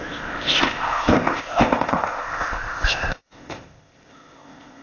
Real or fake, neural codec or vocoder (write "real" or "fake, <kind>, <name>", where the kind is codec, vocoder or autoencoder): fake, codec, ZipCodec